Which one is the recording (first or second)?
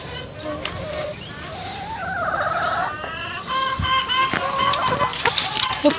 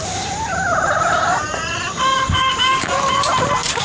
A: first